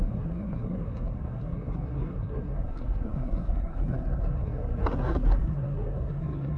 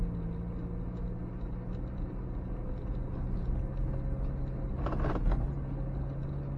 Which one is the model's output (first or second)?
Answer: first